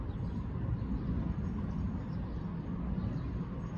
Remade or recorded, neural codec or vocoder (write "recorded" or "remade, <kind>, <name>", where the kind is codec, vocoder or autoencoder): recorded